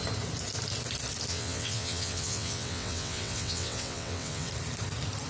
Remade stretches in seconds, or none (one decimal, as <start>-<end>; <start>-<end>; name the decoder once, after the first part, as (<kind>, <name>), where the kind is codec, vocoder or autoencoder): 1.3-4.5 (vocoder, WaveNeXt)